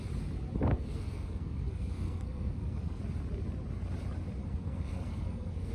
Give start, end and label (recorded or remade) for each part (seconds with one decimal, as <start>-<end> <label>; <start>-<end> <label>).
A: 0.0-0.7 recorded; 0.7-3.0 remade; 3.0-4.4 recorded; 4.4-5.7 remade